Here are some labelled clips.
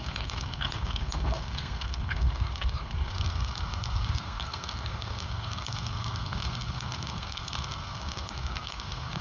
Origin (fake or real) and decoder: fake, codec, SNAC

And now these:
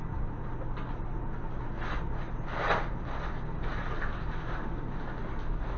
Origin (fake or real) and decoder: real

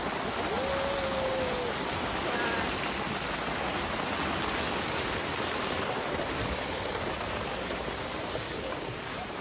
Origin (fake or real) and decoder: real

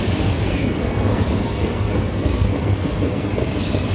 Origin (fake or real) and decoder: fake, codec, SNAC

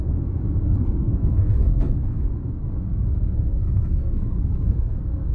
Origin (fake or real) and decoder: fake, codec, SNAC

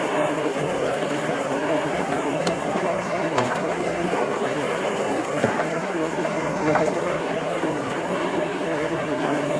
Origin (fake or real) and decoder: fake, codec, SNAC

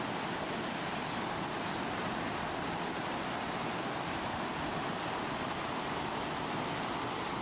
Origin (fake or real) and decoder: real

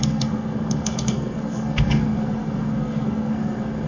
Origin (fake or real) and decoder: fake, codec, SNAC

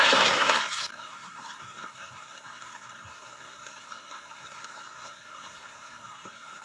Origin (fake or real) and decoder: fake, codec, SNAC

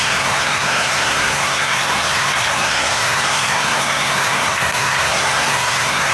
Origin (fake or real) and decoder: fake, codec, SNAC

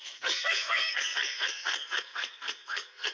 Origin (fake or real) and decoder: fake, codec, SNAC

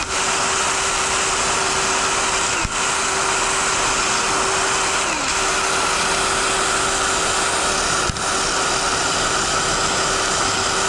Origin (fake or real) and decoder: real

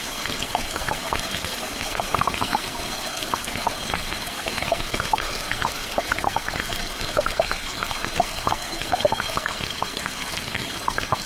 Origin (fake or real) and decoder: fake, codec, SNAC